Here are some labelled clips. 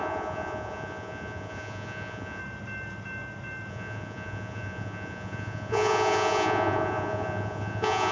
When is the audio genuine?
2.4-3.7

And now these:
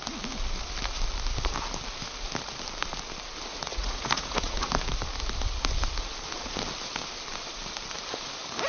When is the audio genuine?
0.0-3.5; 4.7-8.7

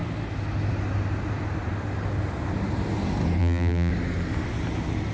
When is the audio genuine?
0.0-3.4; 3.9-5.1